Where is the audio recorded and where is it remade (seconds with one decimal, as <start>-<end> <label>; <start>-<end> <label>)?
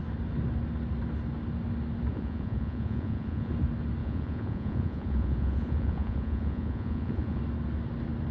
0.0-2.1 recorded; 2.1-3.5 remade; 3.5-4.0 recorded; 4.0-7.4 remade; 7.4-8.3 recorded